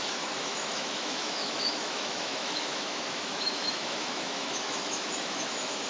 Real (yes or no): no